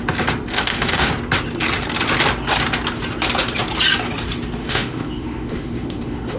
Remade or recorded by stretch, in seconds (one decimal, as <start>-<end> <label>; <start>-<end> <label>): 0.0-0.5 recorded; 0.5-1.1 remade; 1.1-4.6 recorded; 4.6-6.4 remade